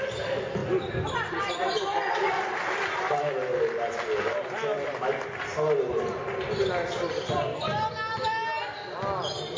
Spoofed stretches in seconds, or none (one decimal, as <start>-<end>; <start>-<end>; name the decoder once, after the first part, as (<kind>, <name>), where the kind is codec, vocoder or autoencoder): none